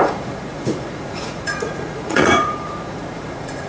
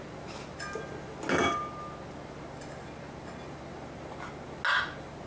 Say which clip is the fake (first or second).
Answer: first